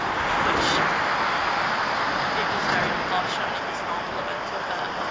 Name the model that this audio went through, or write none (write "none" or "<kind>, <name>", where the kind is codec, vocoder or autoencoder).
none